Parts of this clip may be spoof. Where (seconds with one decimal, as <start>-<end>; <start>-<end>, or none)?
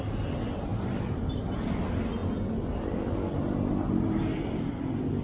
0.7-1.4